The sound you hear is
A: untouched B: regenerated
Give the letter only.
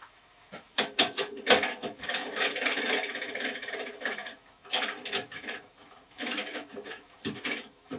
B